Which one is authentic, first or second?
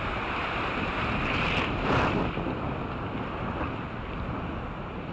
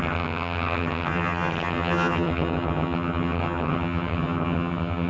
first